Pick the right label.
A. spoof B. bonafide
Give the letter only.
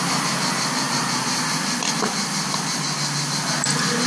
B